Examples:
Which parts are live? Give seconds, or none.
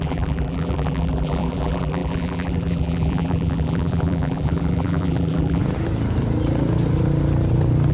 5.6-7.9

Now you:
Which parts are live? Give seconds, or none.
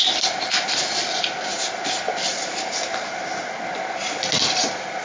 0.0-5.0